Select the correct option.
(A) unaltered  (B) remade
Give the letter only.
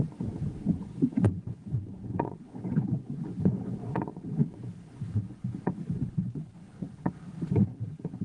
B